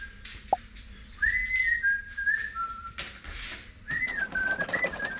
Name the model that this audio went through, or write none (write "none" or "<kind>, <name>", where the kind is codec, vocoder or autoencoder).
none